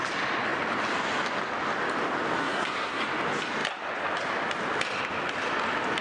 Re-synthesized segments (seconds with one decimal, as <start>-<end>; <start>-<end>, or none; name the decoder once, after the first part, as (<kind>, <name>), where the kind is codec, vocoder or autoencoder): 2.4-3.0 (codec, SNAC)